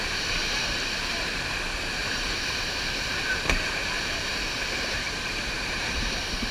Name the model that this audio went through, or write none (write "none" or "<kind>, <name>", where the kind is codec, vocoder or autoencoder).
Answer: vocoder, BigVGAN v2